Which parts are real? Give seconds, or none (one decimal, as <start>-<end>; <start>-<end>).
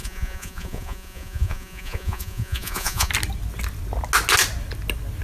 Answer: 3.1-5.2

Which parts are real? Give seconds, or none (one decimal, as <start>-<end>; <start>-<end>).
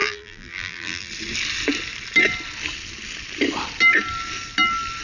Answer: 1.1-5.0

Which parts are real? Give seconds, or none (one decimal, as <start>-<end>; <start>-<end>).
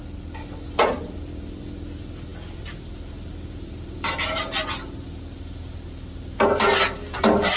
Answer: 0.0-7.6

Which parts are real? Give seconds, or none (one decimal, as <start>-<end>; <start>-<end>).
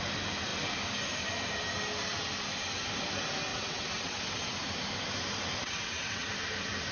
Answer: 0.0-3.5; 4.2-5.6; 6.3-6.9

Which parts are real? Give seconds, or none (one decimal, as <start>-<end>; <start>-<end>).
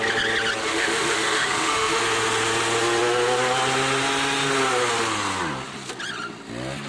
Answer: 0.0-0.6; 2.0-6.9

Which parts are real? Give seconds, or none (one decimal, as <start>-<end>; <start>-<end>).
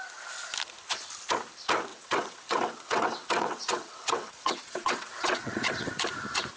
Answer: 0.0-1.9; 5.9-6.6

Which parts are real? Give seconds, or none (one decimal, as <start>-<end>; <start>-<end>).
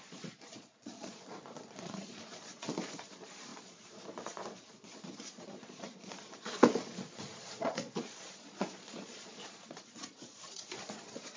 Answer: none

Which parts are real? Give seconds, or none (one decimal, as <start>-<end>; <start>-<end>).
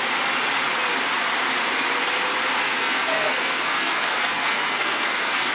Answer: 0.0-2.6